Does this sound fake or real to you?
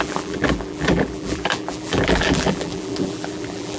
fake